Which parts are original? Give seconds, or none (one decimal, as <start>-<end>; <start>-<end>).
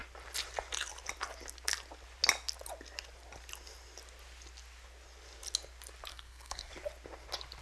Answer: 0.0-6.1; 6.7-7.6